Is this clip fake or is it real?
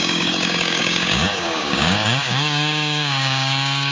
fake